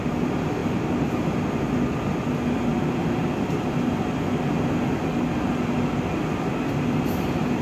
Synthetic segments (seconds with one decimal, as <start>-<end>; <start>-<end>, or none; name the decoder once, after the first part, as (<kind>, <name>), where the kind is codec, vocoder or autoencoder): none